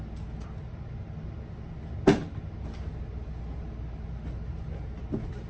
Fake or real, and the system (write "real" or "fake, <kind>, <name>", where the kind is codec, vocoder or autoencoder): real